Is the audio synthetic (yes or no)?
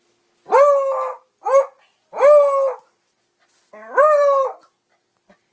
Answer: no